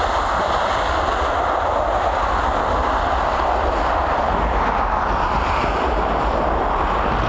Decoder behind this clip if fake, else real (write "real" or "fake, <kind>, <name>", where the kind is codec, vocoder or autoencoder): real